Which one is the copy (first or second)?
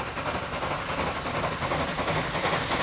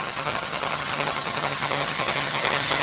second